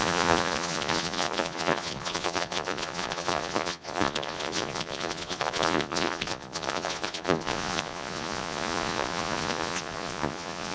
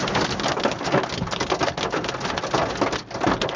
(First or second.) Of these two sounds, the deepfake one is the first